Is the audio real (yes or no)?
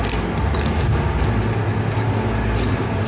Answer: yes